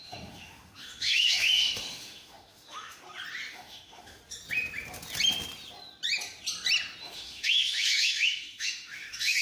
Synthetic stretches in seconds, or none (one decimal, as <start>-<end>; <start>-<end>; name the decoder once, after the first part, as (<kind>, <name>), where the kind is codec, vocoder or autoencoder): 0.0-3.0 (autoencoder, DAC-VAE); 3.5-4.2; 7.0-9.4